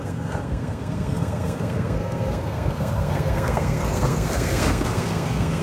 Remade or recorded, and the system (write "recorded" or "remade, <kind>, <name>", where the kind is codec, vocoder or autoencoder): remade, codec, SNAC